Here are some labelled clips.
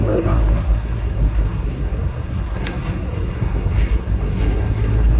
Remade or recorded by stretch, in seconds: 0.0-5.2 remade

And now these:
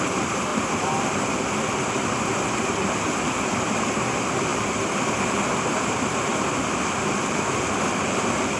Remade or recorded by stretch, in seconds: 0.0-8.6 recorded

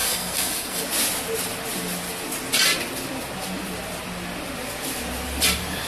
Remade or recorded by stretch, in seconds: 0.0-0.8 remade; 0.8-5.9 recorded

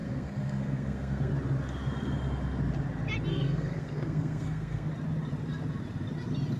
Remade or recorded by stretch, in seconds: 0.0-1.3 remade; 1.3-3.3 recorded; 3.3-4.9 remade; 4.9-6.6 recorded

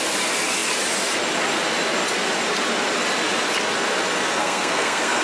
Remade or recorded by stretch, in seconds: 0.0-4.4 recorded; 4.4-5.2 remade

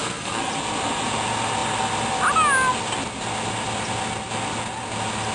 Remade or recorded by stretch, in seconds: 0.0-0.5 remade; 0.5-5.3 recorded

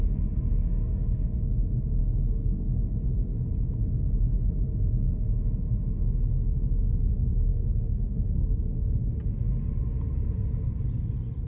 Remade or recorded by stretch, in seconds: 0.0-0.7 recorded; 0.7-1.4 remade; 1.4-2.0 recorded; 2.0-2.8 remade; 2.8-7.5 recorded; 7.5-8.8 remade; 8.8-11.5 recorded